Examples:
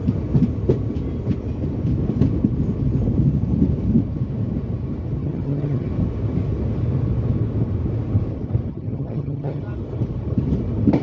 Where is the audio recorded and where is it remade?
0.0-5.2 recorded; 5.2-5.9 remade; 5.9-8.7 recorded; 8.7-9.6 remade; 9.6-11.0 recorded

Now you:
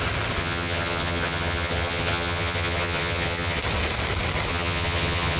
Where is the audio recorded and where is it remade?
0.0-0.4 recorded; 0.4-3.6 remade; 3.6-4.5 recorded; 4.5-5.4 remade

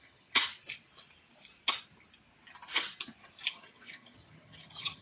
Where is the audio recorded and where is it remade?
0.0-0.5 remade; 0.5-3.5 recorded; 3.5-5.0 remade

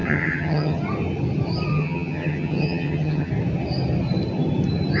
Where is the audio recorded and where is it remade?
0.0-0.8 remade; 0.8-1.7 recorded; 1.7-3.3 remade; 3.3-5.0 recorded

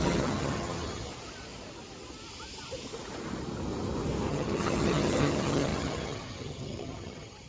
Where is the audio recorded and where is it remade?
0.0-1.1 remade; 1.1-4.3 recorded; 4.3-7.5 remade